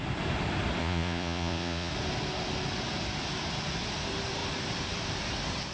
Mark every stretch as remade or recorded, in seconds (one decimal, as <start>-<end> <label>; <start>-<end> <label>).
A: 0.0-0.8 recorded; 0.8-1.9 remade; 1.9-5.7 recorded